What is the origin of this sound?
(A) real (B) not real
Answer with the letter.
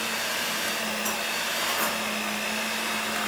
A